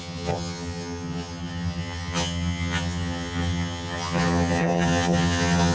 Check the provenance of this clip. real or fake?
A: fake